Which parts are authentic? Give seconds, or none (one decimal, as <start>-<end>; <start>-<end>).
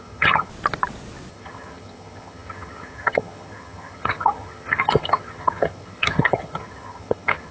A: 0.5-1.3